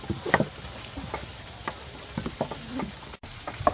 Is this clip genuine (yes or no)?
yes